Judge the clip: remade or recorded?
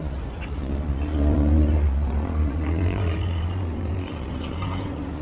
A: remade